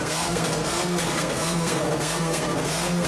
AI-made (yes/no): yes